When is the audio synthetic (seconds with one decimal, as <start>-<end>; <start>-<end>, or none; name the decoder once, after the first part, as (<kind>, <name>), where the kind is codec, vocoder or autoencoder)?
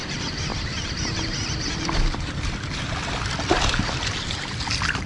none